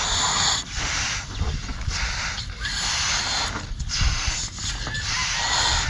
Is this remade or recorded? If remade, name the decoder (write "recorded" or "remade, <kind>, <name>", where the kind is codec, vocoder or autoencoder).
recorded